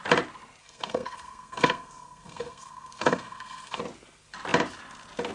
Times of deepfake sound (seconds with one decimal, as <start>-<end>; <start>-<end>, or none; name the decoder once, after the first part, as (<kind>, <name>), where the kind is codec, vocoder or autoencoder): 0.6-3.8 (codec, SNAC)